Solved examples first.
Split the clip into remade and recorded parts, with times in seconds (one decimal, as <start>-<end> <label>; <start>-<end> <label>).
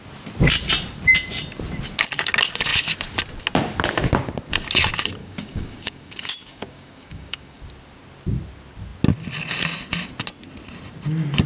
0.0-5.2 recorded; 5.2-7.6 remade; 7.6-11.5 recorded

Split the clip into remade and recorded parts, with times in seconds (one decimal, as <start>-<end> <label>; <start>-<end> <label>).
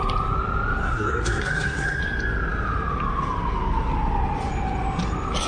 0.0-0.8 recorded; 0.8-2.0 remade; 2.0-5.5 recorded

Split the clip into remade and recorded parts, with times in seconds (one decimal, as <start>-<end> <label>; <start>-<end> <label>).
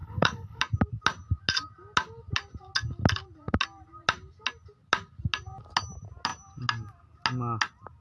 0.0-0.6 remade; 0.6-8.0 recorded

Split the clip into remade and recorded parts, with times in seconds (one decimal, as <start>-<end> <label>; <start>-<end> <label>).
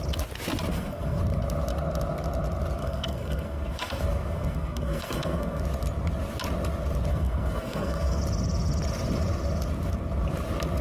0.0-0.7 recorded; 0.7-1.2 remade; 1.2-2.8 recorded; 2.8-5.6 remade; 5.6-7.1 recorded; 7.1-8.2 remade; 8.2-10.8 recorded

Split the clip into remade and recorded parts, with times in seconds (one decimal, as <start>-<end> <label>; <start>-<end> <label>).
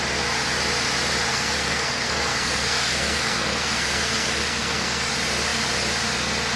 0.0-1.3 recorded; 1.3-5.1 remade; 5.1-6.6 recorded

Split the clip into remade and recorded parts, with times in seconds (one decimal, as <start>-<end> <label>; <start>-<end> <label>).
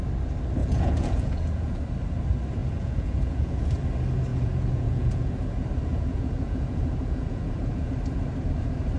0.0-0.6 recorded; 0.6-1.8 remade; 1.8-2.6 recorded; 2.6-3.7 remade; 3.7-4.3 recorded; 4.3-5.3 remade; 5.3-5.9 recorded; 5.9-7.9 remade; 7.9-9.0 recorded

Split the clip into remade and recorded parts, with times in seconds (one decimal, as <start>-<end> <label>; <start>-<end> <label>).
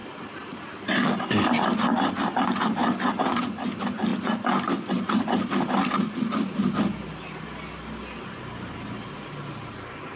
0.0-10.2 recorded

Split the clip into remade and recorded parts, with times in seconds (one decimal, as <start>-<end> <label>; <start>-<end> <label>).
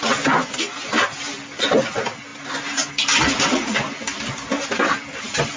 0.0-5.6 recorded